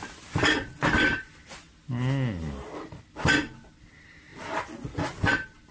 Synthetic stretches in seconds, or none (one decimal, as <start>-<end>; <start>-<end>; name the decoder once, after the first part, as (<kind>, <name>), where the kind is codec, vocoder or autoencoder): none